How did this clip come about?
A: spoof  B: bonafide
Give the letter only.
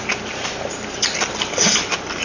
B